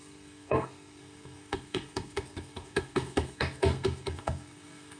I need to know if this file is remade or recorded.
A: remade